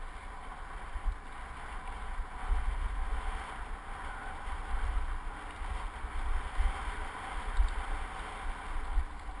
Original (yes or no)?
yes